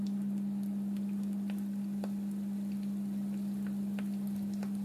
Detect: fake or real real